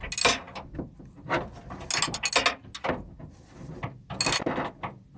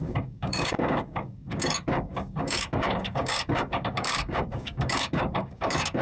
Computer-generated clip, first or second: second